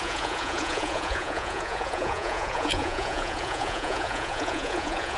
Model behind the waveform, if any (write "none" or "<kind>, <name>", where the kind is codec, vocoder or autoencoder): vocoder, Vocos